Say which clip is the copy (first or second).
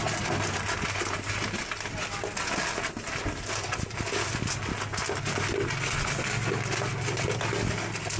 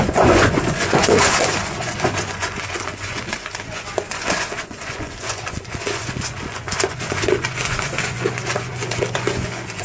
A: second